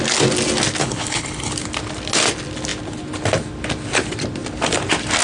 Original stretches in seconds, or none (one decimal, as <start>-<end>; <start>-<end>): 0.0-0.8; 1.5-5.2

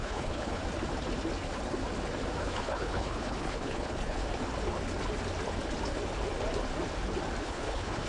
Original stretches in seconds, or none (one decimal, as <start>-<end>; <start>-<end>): 0.6-2.4; 4.2-7.4

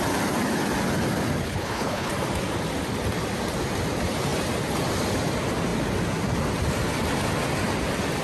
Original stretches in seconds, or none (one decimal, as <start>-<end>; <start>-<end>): 0.0-1.4; 2.1-8.2

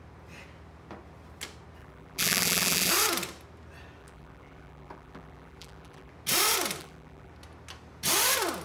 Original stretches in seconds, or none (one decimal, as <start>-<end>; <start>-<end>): 0.0-1.8; 2.9-4.0; 6.1-6.8; 7.3-8.6

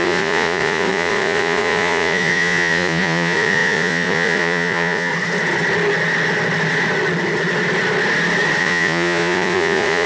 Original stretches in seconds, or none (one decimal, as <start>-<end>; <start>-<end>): 5.1-8.6

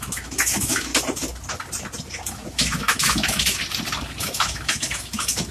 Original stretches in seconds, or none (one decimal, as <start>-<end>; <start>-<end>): 0.9-2.3; 3.6-4.2

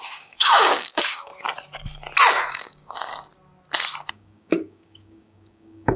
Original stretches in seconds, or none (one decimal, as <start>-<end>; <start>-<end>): 1.3-2.5; 3.1-4.1